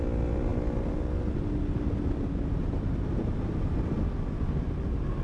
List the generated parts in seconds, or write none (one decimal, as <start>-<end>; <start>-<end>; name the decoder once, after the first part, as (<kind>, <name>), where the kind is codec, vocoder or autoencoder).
none